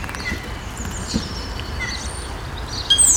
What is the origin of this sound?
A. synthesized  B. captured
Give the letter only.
B